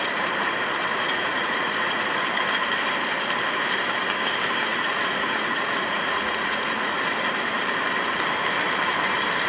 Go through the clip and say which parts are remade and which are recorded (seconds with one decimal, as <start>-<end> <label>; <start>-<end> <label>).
0.0-0.9 recorded; 0.9-2.0 remade; 2.0-4.7 recorded; 4.7-7.0 remade; 7.0-9.5 recorded